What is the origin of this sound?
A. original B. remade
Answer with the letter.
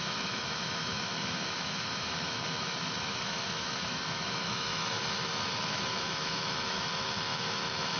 B